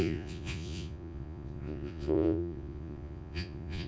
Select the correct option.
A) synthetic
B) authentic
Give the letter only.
A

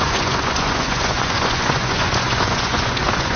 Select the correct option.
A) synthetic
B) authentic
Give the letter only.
A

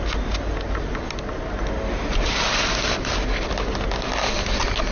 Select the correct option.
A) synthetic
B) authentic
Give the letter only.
B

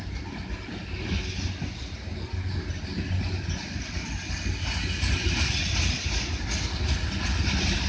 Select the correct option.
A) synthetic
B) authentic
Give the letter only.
B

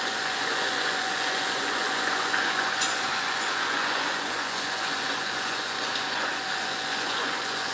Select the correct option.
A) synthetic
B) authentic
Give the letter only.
A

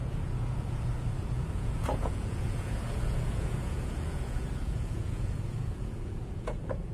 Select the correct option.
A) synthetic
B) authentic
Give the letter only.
A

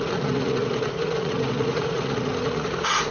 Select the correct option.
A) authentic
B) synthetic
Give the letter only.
B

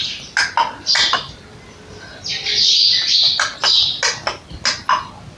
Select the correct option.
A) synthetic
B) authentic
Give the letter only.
B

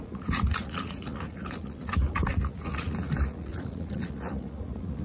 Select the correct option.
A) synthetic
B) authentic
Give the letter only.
A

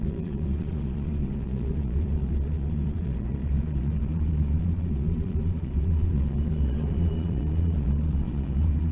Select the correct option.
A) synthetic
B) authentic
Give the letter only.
A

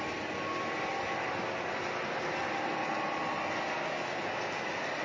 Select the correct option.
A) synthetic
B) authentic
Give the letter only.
B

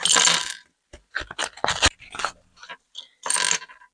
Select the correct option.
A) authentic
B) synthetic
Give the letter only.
A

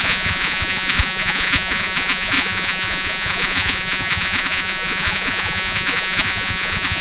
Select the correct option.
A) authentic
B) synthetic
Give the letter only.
B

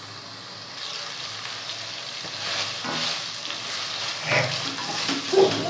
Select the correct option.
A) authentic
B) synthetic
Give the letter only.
A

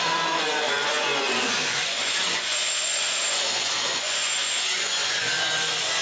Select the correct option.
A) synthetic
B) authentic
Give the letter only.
A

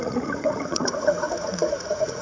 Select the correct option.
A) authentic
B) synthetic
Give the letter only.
B